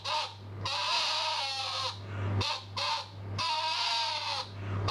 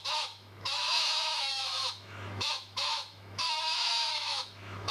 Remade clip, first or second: second